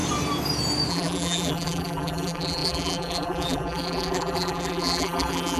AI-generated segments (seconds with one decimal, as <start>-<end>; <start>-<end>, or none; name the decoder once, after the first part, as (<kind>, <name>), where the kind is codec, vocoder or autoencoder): 0.9-5.6 (vocoder, BigVGAN v2)